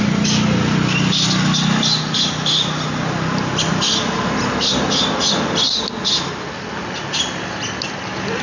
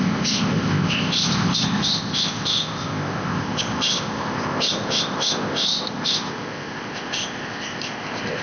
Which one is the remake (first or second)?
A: second